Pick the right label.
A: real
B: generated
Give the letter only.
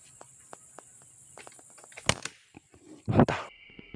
A